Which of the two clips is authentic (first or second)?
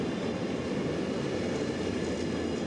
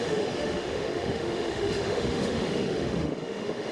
first